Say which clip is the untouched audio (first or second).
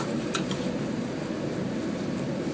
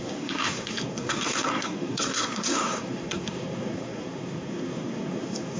first